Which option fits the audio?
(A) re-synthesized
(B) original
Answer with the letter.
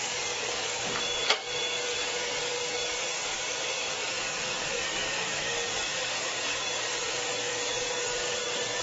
A